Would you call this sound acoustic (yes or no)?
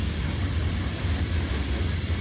yes